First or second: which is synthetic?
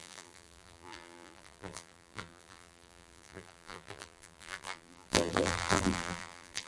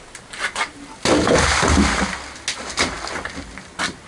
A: first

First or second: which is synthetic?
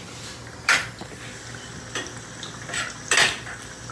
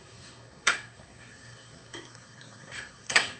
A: second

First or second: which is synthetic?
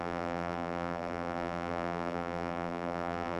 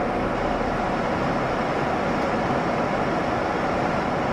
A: first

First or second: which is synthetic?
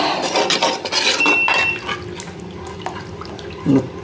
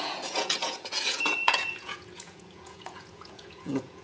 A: second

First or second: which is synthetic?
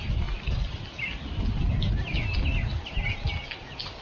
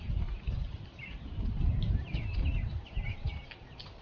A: second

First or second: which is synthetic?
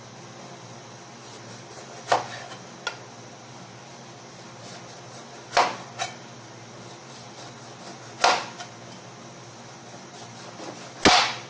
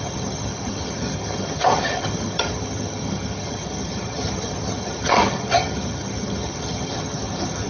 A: second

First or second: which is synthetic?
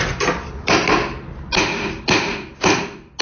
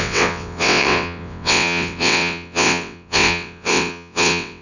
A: second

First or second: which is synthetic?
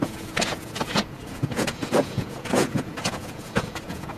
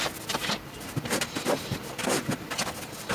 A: first